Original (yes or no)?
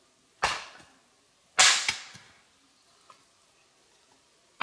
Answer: yes